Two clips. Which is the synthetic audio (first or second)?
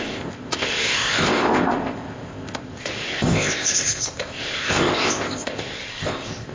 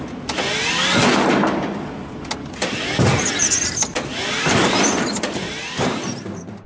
first